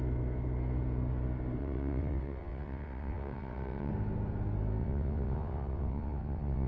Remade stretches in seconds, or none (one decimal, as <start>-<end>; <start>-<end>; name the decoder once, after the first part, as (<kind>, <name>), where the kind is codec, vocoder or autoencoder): 1.6-3.9 (vocoder, WaveNeXt); 4.8-6.7